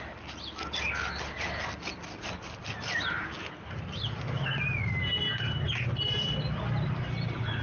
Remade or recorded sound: recorded